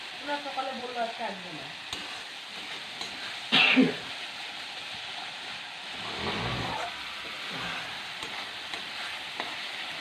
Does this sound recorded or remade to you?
recorded